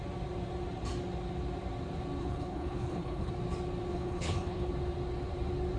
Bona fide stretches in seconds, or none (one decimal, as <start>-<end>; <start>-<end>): 0.0-2.2; 3.3-3.9; 4.7-5.8